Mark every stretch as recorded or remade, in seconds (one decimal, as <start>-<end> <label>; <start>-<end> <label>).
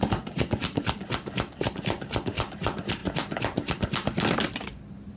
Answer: 0.0-5.2 recorded